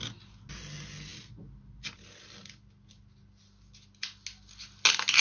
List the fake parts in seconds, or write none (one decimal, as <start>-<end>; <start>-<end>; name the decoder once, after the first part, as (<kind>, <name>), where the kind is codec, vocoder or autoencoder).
none